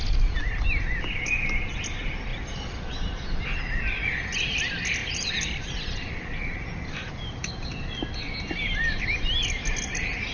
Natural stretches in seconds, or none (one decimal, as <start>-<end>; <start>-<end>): 0.0-5.0; 7.7-10.3